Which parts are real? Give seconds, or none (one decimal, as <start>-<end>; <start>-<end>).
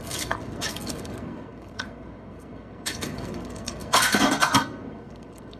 none